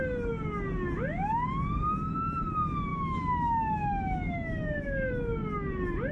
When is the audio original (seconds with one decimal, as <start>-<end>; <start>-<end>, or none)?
0.0-2.9; 5.1-6.1